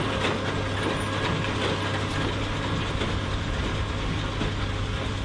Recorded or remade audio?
recorded